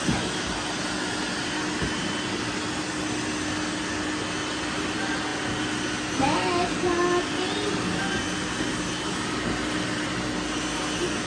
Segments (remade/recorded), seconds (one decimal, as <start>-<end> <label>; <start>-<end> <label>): 0.0-11.3 recorded